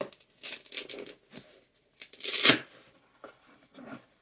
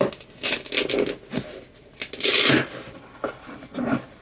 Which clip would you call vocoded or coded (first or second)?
first